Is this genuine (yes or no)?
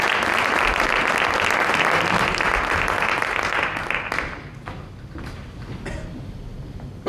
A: yes